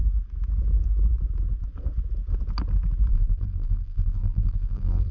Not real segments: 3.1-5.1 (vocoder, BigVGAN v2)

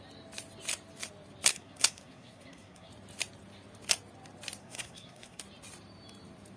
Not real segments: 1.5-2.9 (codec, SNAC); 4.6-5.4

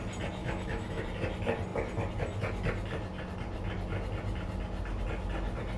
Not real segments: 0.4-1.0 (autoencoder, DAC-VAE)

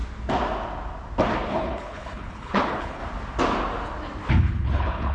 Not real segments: 1.5-3.0 (codec, HILCodec); 4.3-5.1

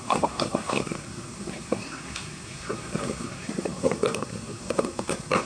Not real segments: 0.0-5.5 (codec, SNAC)

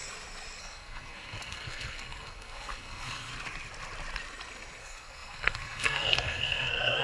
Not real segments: 0.6-3.3 (codec, SNAC); 4.8-7.0

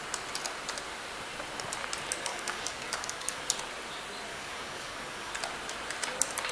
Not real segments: 2.3-3.4 (codec, DAC); 4.3-5.3

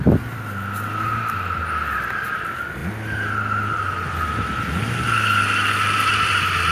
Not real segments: 2.8-3.3 (vocoder, BigVGAN v2)